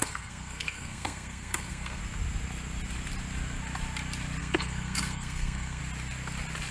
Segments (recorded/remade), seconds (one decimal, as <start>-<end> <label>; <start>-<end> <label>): 0.0-2.0 remade; 2.0-4.4 recorded; 4.4-5.8 remade; 5.8-6.7 recorded